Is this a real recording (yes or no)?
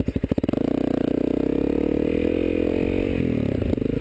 yes